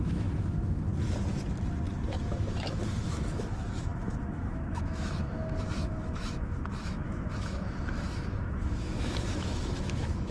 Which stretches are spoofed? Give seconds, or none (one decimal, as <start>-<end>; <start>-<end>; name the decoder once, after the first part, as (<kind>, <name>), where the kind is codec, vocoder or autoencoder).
0.0-0.9 (autoencoder, DAC-VAE); 2.1-10.3